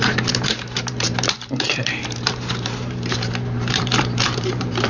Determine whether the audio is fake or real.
fake